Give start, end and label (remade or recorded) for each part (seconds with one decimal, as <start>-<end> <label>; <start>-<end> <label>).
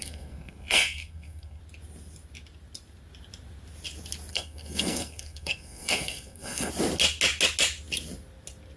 0.0-1.6 remade; 1.6-4.3 recorded; 4.3-6.7 remade; 6.7-8.8 recorded